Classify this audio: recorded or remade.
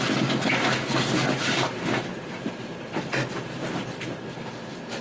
remade